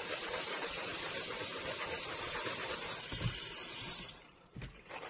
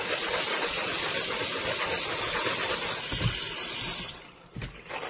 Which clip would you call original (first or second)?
second